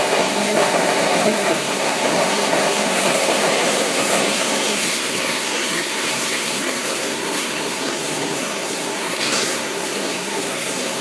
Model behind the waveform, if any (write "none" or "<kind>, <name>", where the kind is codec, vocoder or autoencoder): codec, SNAC